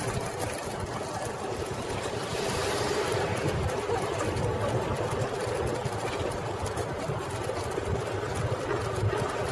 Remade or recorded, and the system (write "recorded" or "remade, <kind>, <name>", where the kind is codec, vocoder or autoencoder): recorded